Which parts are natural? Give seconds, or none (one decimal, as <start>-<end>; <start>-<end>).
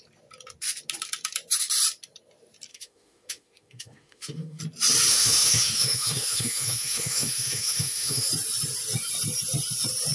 0.0-2.7; 4.6-5.1; 8.3-10.1